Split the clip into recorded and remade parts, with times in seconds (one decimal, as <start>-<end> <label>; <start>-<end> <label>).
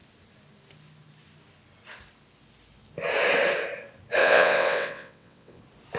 0.0-4.2 recorded; 4.2-5.6 remade; 5.6-6.0 recorded